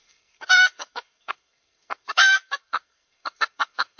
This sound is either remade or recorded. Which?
remade